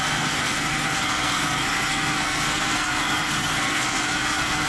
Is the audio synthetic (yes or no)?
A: yes